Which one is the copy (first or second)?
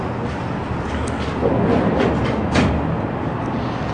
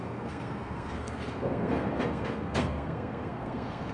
second